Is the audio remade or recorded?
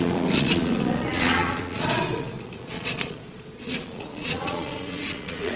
remade